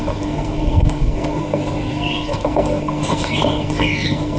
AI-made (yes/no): yes